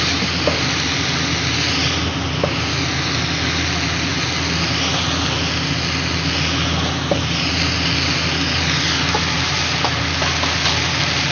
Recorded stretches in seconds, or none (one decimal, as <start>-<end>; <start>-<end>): 0.0-11.3